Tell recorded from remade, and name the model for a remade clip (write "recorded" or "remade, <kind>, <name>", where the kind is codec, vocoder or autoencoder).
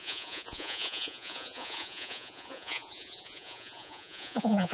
remade, vocoder, Vocos